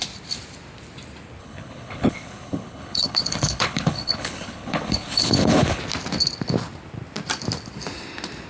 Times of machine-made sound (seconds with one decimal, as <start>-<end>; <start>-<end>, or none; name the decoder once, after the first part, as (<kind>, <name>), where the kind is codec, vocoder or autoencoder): 1.4-5.8 (codec, HILCodec)